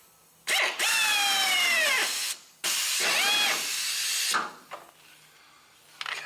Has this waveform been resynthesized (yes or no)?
no